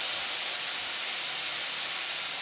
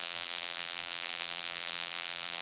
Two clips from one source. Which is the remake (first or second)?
second